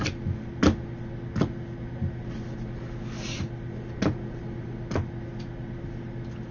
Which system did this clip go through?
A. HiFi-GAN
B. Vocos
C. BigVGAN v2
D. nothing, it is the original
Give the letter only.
D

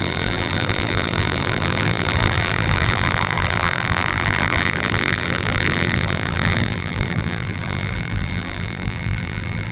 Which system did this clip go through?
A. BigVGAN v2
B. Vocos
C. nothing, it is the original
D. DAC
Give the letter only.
A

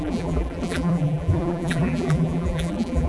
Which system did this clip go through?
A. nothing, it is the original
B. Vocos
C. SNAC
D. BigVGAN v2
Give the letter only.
D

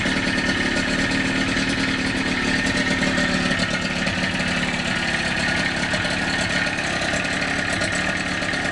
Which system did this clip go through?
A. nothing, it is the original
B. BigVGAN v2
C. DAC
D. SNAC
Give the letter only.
A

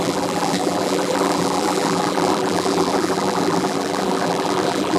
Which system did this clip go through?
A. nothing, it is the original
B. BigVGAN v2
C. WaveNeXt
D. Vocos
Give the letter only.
B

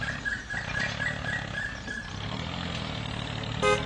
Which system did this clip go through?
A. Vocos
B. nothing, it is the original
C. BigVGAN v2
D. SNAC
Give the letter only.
B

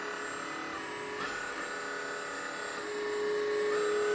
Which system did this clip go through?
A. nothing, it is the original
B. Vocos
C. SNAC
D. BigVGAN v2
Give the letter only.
A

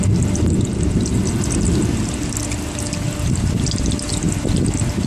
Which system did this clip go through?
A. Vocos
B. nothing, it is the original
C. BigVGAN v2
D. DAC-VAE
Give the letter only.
B